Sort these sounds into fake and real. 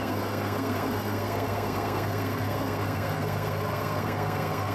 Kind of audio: fake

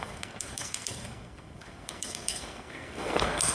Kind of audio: fake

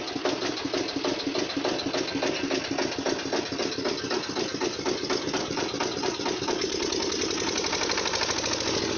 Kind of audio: real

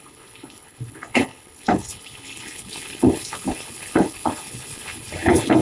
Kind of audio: fake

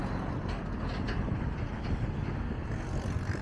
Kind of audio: real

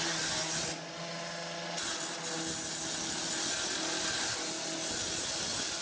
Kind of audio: real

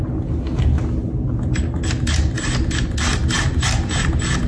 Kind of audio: real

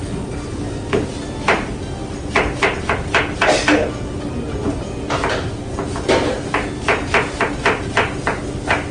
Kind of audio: real